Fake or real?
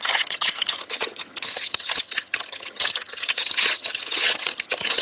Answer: fake